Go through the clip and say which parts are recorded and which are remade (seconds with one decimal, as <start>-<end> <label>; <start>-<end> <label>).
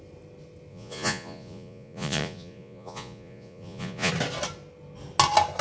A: 0.0-0.7 recorded; 0.7-4.1 remade; 4.1-5.6 recorded